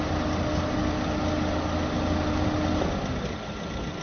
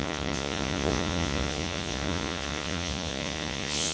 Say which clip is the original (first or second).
first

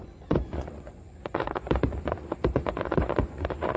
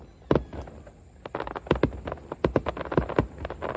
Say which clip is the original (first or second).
second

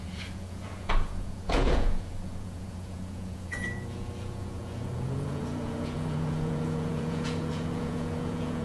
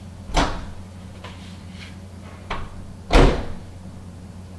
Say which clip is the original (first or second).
second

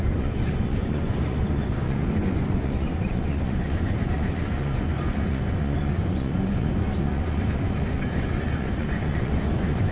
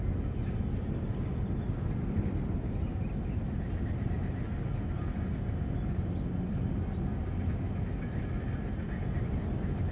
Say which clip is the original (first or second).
second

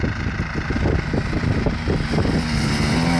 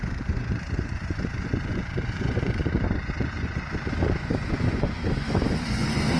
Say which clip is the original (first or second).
first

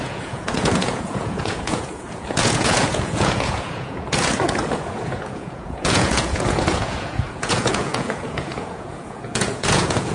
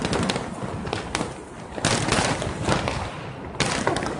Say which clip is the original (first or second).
second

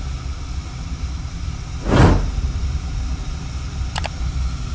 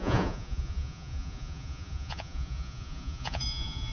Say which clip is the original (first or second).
first